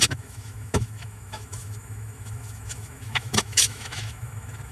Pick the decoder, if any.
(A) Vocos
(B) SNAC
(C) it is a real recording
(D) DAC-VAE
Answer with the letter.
D